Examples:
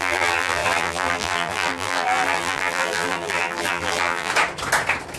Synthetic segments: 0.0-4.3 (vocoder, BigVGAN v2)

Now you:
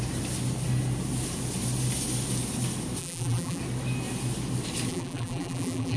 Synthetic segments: 3.0-3.6 (vocoder, BigVGAN v2); 4.9-6.0

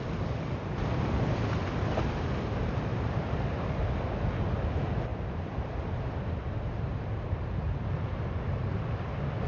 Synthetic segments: 2.9-3.8 (vocoder, BigVGAN v2); 5.1-8.6

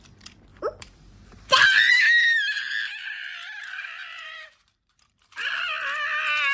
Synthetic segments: 0.5-2.0 (vocoder, BigVGAN v2); 2.5-5.4

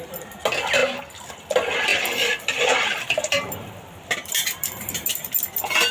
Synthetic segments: 1.9-5.4 (vocoder, BigVGAN v2)